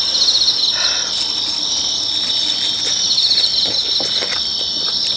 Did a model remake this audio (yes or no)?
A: no